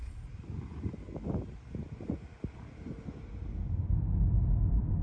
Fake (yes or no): no